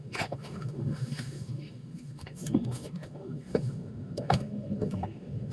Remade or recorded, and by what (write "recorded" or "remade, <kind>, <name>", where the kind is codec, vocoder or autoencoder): remade, autoencoder, DAC-VAE